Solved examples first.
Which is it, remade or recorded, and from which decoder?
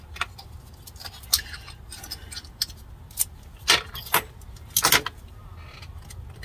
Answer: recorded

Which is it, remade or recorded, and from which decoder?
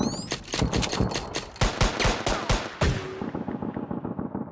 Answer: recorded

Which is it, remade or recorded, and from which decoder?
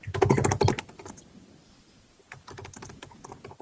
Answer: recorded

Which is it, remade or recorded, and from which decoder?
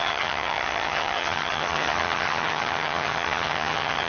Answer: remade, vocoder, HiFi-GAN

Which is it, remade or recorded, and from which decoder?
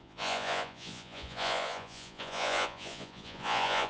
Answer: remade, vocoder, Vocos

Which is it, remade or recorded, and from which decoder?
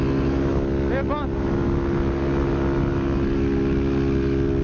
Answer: recorded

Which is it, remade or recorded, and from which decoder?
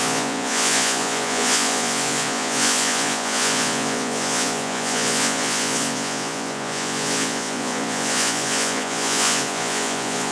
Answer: remade, vocoder, Vocos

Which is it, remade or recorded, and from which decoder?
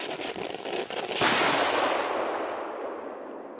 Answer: recorded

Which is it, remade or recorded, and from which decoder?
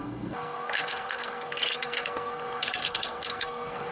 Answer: remade, codec, SNAC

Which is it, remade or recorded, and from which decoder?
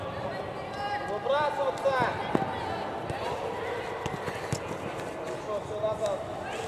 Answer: recorded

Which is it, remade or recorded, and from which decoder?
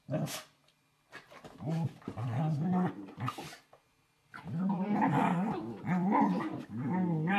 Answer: remade, vocoder, BigVGAN v2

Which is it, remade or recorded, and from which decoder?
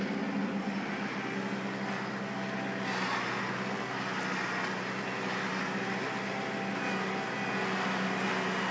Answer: recorded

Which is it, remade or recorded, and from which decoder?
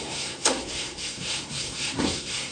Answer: remade, codec, SNAC